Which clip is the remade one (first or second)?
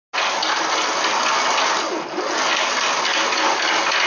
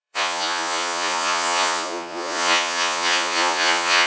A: second